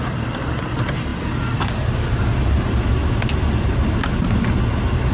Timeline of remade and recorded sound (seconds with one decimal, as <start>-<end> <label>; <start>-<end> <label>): 0.0-5.1 recorded